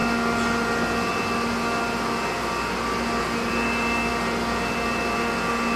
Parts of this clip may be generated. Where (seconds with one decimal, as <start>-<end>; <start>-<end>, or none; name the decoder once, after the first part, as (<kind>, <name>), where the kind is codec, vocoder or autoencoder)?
none